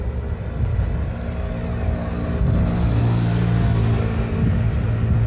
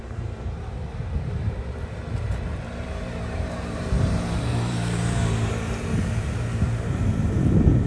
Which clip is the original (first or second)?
first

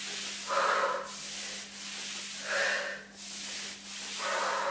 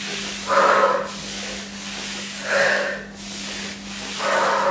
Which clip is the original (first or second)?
first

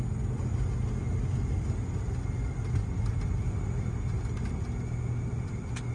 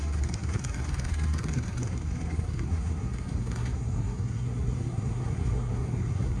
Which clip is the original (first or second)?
first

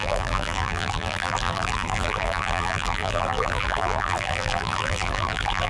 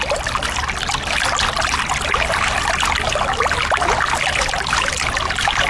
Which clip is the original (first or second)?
second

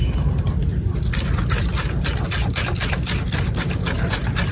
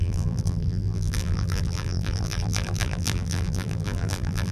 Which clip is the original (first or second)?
first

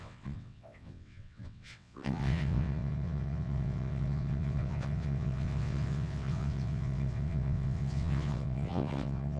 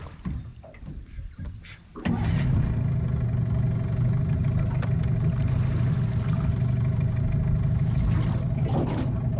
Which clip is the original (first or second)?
second